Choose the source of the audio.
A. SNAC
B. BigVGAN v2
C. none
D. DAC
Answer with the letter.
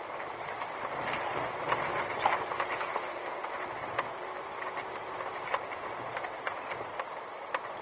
B